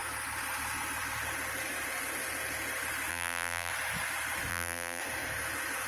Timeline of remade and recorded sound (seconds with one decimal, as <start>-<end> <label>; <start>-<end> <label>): 0.0-3.1 recorded; 3.1-3.7 remade; 3.7-4.5 recorded; 4.5-5.0 remade; 5.0-5.9 recorded